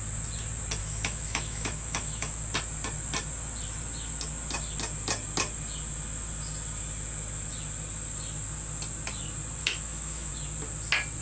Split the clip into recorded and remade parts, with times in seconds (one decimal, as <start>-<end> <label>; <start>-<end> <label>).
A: 0.0-0.8 recorded; 0.8-2.4 remade; 2.4-9.6 recorded; 9.6-10.3 remade; 10.3-11.2 recorded